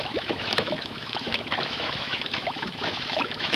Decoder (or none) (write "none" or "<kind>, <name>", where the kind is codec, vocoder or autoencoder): autoencoder, DAC-VAE